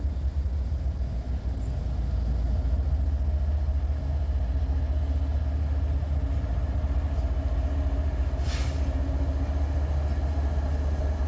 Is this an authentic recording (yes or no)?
yes